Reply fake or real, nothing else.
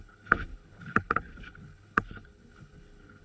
fake